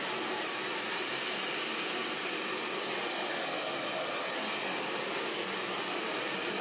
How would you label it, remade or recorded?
recorded